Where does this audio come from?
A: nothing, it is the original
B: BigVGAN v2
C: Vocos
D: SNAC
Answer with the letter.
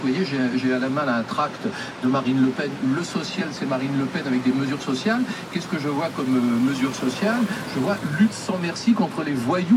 A